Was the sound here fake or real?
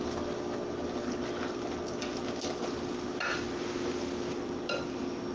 real